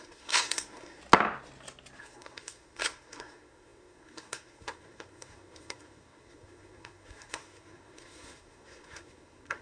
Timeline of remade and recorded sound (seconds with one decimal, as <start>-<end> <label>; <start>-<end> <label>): 0.0-1.0 remade; 1.0-2.0 recorded; 2.0-9.6 remade